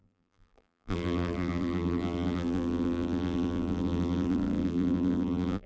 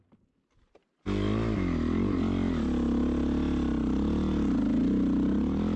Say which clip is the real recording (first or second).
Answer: second